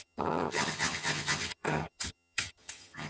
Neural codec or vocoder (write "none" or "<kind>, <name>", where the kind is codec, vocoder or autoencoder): vocoder, HiFi-GAN